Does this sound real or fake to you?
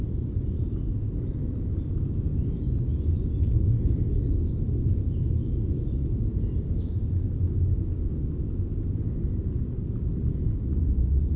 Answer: real